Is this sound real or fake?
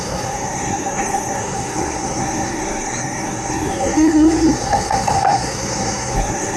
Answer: fake